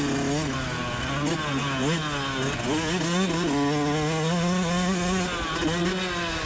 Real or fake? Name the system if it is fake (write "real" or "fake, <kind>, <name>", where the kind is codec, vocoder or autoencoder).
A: real